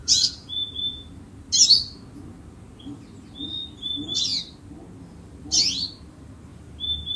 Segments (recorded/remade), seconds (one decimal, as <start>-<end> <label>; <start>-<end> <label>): 0.0-0.8 remade; 0.8-7.2 recorded